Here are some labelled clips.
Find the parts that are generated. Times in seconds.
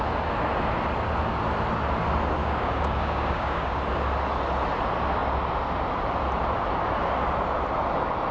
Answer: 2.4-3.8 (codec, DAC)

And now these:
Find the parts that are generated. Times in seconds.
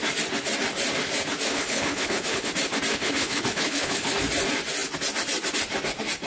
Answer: 1.5-2.5 (codec, HILCodec); 2.9-4.1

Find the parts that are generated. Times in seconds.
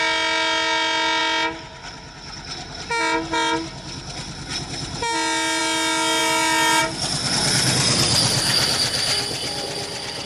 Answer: none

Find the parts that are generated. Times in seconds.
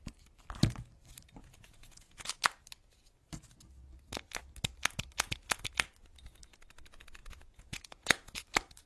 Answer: 1.4-2.4 (vocoder, Vocos); 7.2-8.4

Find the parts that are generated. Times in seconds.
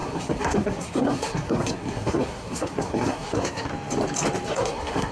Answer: 0.0-3.7 (codec, SNAC); 4.5-5.1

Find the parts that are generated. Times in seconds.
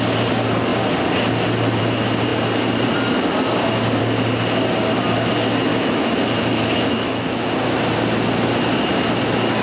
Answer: 5.7-7.4 (autoencoder, DAC-VAE)